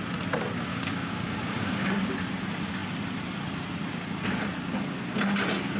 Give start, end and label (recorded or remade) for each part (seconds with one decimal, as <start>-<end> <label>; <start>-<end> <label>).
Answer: 0.0-0.7 recorded; 0.7-2.1 remade; 2.1-5.8 recorded